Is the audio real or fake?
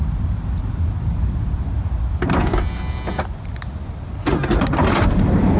real